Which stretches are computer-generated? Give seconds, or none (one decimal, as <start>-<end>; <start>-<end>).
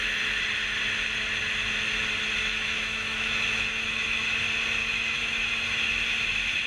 2.4-4.3; 4.8-5.9